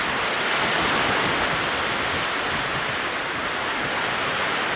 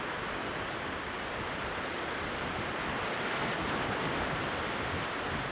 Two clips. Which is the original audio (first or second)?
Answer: first